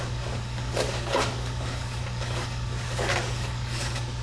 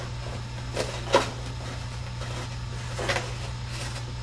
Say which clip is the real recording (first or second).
second